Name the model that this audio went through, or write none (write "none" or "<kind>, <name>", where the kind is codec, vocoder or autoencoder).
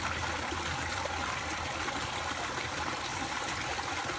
vocoder, BigVGAN v2